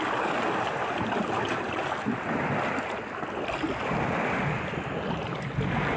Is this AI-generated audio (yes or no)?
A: no